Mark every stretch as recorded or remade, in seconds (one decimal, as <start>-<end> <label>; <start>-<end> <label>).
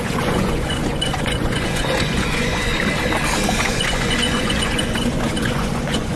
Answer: 0.0-2.7 remade; 2.7-3.5 recorded; 3.5-6.2 remade